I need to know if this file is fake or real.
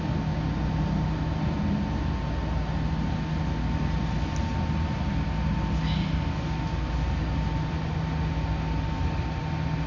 real